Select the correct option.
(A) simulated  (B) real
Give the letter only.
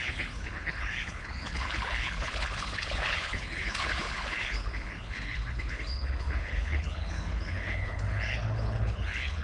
A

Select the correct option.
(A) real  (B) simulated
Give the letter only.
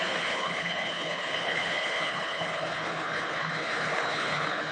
B